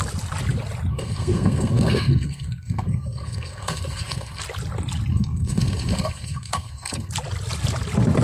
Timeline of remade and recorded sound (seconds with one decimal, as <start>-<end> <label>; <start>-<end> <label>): 0.0-0.9 recorded; 0.9-4.4 remade; 4.4-5.1 recorded; 5.1-7.1 remade; 7.1-8.2 recorded